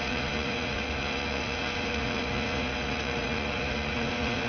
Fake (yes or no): yes